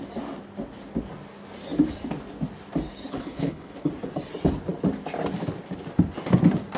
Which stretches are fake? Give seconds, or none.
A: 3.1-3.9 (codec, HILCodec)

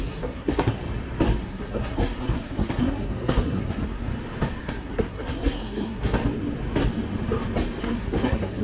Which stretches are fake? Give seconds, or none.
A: 0.0-0.8 (codec, SNAC); 1.4-4.1; 4.6-6.2; 7.8-8.6

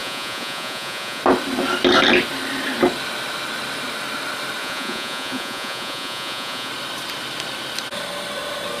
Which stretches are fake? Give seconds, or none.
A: 0.0-1.2 (vocoder, Vocos); 4.6-6.7

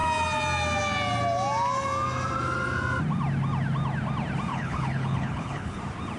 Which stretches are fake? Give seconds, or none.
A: 4.5-5.8 (codec, HILCodec)

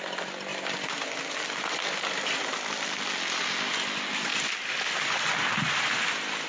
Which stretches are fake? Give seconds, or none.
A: 0.5-1.4 (vocoder, BigVGAN v2); 4.3-5.4

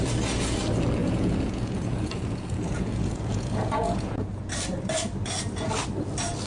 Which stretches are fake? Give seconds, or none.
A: 1.0-4.3 (vocoder, Vocos)